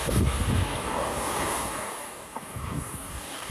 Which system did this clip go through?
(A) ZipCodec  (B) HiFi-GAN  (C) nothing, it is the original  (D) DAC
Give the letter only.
D